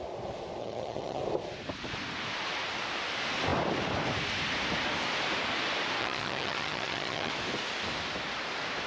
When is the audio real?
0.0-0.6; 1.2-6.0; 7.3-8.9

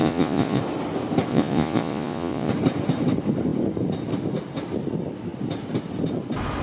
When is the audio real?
0.6-1.3; 2.5-6.6

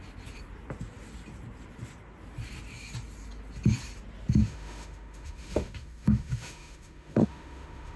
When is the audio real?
0.0-4.4

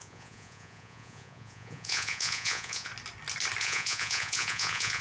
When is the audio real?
2.9-3.6